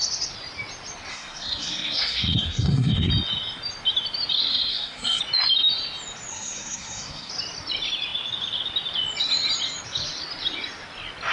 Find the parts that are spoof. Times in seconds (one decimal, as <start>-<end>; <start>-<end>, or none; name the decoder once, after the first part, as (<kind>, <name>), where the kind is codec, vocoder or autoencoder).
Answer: 1.1-3.1 (codec, SNAC); 4.5-5.2; 6.3-7.3